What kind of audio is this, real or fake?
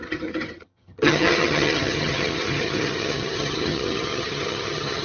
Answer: fake